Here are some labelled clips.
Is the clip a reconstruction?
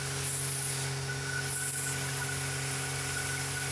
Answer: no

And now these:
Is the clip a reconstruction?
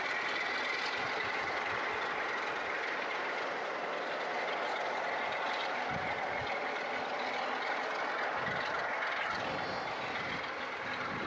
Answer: no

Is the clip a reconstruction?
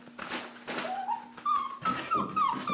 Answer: no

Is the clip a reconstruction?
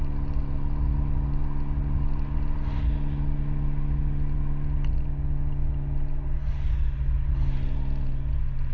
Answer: no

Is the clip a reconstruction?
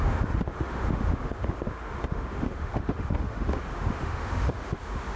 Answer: yes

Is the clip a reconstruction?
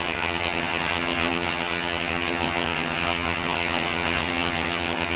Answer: yes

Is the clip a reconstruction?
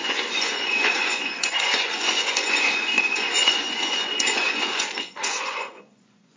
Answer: yes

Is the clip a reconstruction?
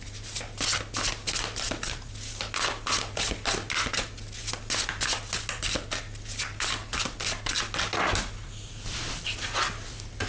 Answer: no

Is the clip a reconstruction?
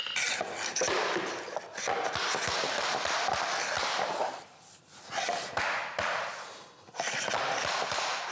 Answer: no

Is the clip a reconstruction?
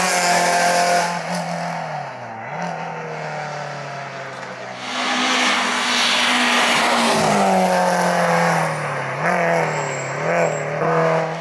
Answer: no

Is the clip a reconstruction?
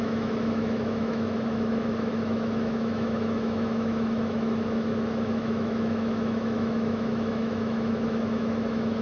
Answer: yes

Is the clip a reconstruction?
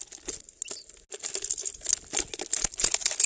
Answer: no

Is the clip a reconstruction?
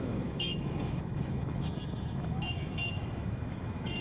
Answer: yes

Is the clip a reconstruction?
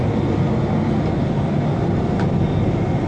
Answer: no